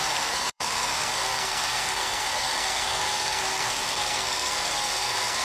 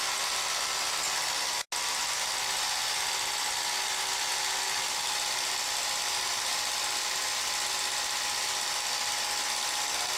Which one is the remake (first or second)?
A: first